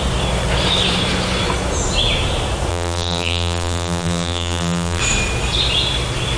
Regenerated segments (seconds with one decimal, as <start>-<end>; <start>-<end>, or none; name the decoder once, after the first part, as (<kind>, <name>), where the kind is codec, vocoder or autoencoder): 2.7-5.0 (vocoder, BigVGAN v2)